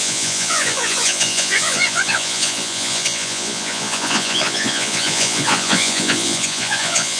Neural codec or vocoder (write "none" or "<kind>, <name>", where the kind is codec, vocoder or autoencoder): vocoder, Vocos